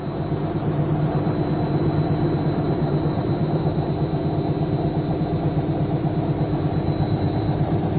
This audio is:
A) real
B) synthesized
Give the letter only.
B